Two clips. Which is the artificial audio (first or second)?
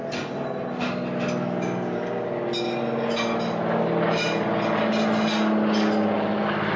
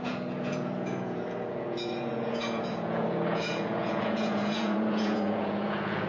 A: second